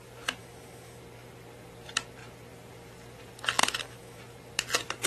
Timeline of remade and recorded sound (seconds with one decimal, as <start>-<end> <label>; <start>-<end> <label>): 0.0-0.4 recorded; 0.4-1.0 remade; 1.0-3.6 recorded; 3.6-4.2 remade; 4.2-5.1 recorded